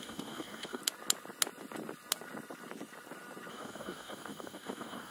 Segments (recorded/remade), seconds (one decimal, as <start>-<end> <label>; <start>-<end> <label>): 0.0-0.8 remade; 0.8-3.5 recorded; 3.5-5.1 remade